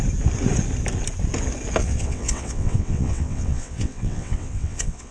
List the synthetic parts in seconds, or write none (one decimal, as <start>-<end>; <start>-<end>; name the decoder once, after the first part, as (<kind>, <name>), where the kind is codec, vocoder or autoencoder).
1.8-5.1 (vocoder, WaveNeXt)